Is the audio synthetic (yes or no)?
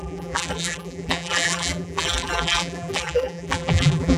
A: yes